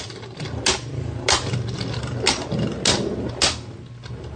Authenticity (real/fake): real